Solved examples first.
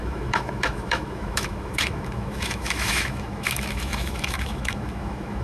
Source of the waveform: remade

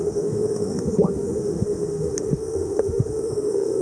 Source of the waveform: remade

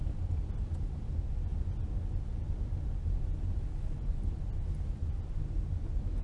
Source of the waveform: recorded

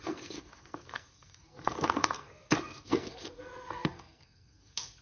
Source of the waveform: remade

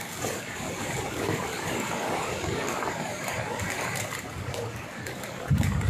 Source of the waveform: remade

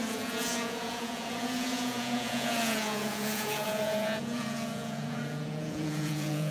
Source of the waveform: remade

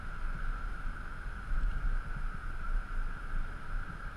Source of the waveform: recorded